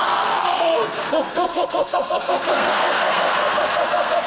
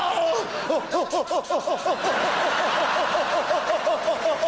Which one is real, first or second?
second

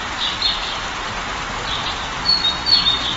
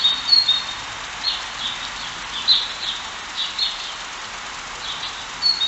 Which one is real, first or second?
second